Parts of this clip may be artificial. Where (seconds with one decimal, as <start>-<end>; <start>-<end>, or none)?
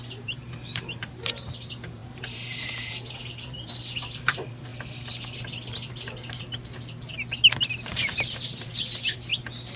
0.0-4.7; 7.7-9.3